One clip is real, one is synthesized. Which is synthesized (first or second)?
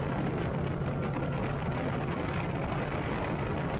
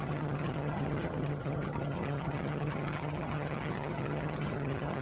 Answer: second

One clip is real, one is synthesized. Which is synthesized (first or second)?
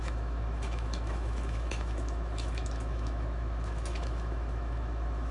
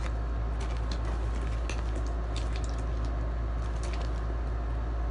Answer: first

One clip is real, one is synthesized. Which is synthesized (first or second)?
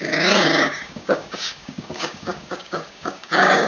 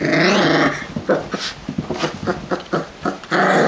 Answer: first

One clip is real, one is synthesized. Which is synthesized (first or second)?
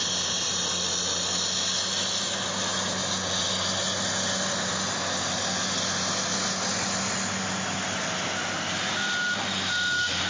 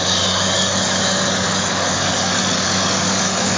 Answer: second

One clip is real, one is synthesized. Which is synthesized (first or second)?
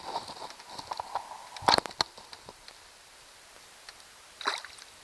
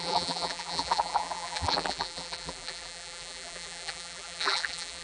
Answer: second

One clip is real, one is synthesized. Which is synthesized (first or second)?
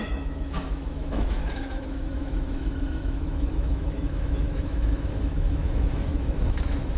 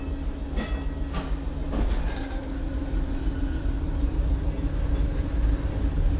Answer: first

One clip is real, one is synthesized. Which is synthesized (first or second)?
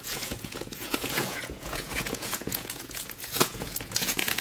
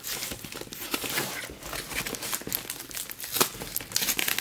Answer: first